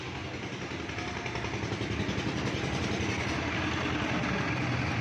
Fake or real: real